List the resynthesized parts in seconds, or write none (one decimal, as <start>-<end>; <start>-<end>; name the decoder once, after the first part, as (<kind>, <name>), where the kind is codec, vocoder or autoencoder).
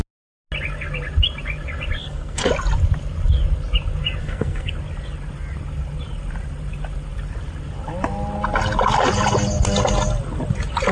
2.0-2.5 (codec, SNAC); 4.2-4.7